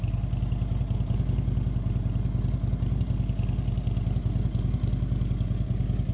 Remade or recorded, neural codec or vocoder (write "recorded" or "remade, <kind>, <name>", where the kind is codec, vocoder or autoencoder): recorded